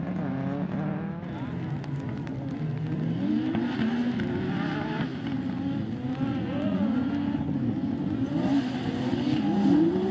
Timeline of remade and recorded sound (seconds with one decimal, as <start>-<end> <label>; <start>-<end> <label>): 0.0-6.3 recorded; 6.3-7.1 remade; 7.1-10.1 recorded